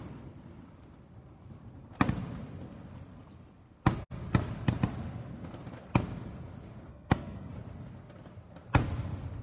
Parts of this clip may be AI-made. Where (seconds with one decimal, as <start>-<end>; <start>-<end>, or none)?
6.9-7.5